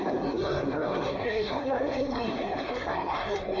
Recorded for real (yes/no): no